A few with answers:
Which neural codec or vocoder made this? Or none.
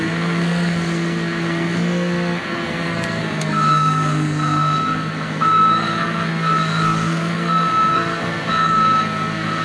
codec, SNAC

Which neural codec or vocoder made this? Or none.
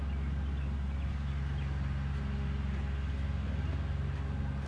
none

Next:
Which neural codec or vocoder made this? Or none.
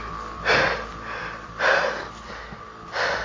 none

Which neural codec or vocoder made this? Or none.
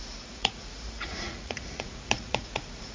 vocoder, Vocos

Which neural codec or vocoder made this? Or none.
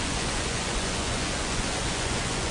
vocoder, Vocos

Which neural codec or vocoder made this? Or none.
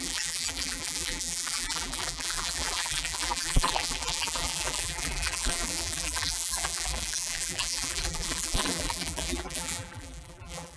vocoder, BigVGAN v2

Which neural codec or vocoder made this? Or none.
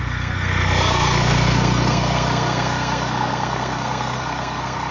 codec, SNAC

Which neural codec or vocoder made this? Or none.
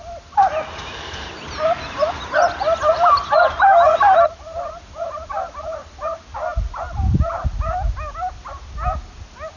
none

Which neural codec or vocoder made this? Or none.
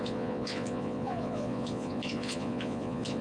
vocoder, Vocos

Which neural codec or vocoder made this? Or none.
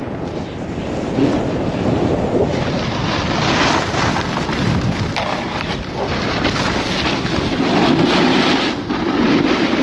none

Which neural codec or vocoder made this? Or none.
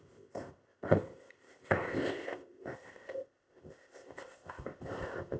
codec, ZipCodec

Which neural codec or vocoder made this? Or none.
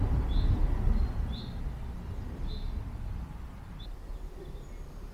none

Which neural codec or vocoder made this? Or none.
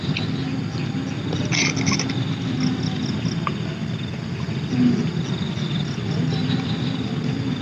none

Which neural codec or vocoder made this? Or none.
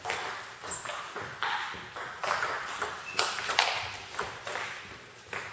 none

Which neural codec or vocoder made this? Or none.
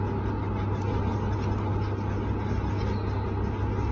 none